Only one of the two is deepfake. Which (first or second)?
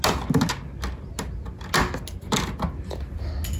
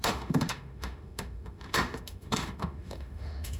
second